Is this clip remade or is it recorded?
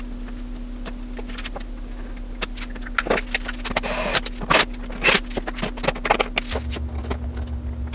recorded